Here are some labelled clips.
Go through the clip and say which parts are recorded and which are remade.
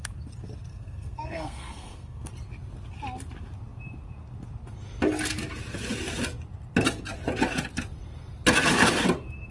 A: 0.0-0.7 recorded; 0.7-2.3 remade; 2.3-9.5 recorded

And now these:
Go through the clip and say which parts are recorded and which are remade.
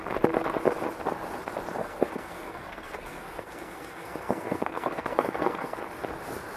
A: 0.0-1.8 recorded; 1.8-5.8 remade; 5.8-6.6 recorded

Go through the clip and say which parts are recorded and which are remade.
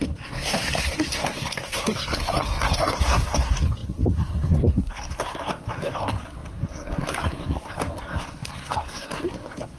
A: 0.0-9.8 remade